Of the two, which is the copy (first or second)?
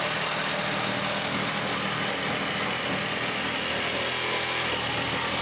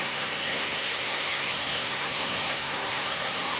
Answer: second